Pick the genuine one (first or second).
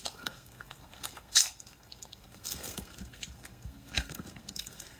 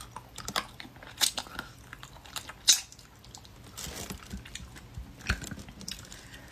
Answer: second